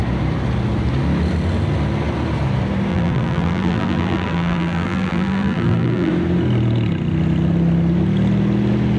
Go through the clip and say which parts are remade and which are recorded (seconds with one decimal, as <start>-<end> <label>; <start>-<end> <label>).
0.0-2.9 recorded; 2.9-6.1 remade; 6.1-9.0 recorded